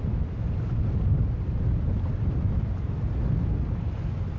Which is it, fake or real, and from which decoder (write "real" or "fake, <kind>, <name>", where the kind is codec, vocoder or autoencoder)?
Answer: real